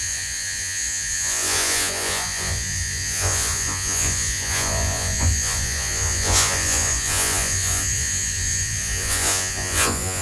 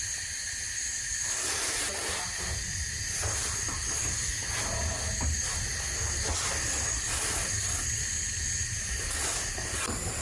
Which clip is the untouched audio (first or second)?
second